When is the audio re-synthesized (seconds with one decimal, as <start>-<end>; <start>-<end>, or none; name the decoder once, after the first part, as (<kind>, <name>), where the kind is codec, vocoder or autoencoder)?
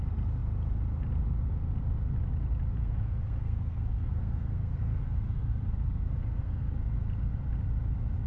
2.8-6.7 (codec, SNAC)